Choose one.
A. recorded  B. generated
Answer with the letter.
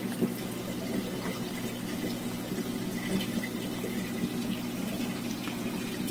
A